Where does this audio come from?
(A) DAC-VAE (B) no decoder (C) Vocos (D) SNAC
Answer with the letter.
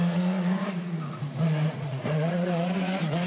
C